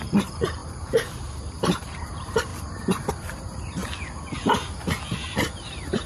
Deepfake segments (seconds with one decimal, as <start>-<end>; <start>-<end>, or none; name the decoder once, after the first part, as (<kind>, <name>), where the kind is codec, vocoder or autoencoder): 0.0-2.5 (vocoder, BigVGAN v2); 3.1-3.8